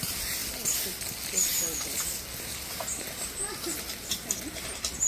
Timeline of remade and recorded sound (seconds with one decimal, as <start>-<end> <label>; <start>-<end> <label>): 0.0-5.1 recorded

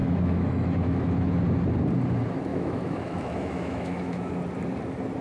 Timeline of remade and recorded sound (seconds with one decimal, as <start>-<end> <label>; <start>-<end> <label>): 0.0-1.3 remade; 1.3-2.5 recorded; 2.5-4.3 remade; 4.3-5.2 recorded